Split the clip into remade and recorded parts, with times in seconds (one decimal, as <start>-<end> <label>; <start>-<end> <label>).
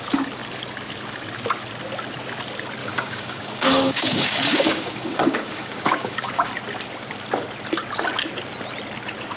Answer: 0.0-2.8 recorded; 2.8-6.5 remade; 6.5-9.4 recorded